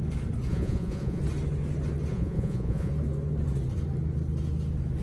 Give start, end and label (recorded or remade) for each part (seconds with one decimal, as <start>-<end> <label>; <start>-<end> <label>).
0.0-0.5 recorded; 0.5-1.2 remade; 1.2-2.1 recorded; 2.1-2.9 remade; 2.9-5.0 recorded

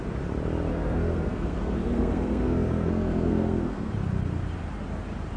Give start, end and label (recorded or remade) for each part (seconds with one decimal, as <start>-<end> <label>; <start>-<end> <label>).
0.0-0.7 recorded; 0.7-3.9 remade; 3.9-5.4 recorded

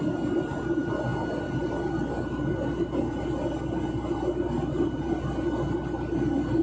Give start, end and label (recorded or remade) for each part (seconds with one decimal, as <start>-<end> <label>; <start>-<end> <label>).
0.0-6.6 recorded

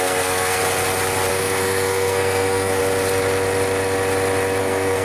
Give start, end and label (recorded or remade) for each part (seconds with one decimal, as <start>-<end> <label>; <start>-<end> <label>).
0.0-0.6 remade; 0.6-1.3 recorded; 1.3-2.8 remade; 2.8-4.6 recorded; 4.6-5.0 remade